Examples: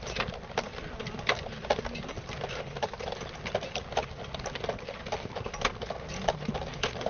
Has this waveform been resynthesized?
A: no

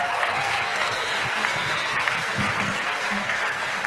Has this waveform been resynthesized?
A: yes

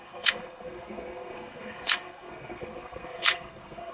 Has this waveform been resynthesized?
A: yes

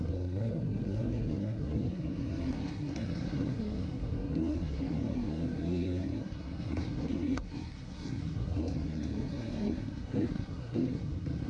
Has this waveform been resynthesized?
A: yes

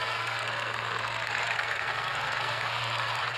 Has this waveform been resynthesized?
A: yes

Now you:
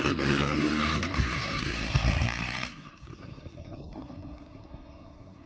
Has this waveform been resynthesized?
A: yes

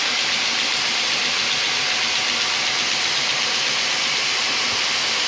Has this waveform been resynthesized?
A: no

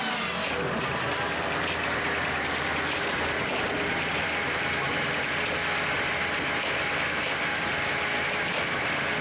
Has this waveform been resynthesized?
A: no